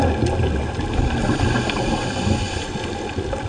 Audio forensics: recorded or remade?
recorded